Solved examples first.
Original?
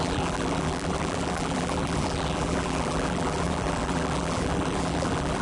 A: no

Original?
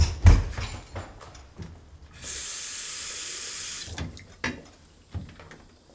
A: yes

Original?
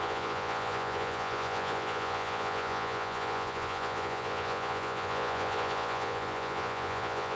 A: no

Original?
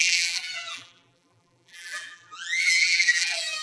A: no